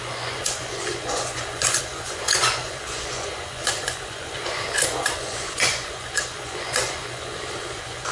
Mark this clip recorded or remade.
remade